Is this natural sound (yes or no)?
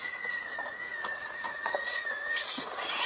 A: no